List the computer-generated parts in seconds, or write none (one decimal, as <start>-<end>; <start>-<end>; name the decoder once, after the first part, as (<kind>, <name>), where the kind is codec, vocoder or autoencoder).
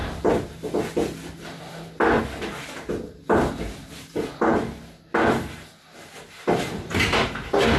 none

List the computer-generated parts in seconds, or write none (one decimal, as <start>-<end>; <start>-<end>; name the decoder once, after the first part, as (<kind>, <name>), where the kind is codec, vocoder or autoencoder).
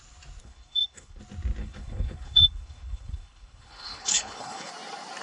0.4-1.2 (codec, HILCodec); 1.6-4.7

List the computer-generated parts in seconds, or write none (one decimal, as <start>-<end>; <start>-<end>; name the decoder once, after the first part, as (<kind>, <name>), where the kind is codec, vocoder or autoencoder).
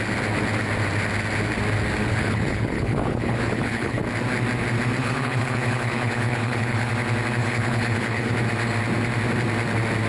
2.1-4.0 (codec, HILCodec); 5.0-6.9; 7.4-8.3